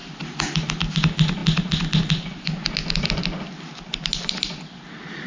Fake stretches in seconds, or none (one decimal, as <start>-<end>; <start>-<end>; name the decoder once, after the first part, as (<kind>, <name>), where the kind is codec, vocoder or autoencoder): none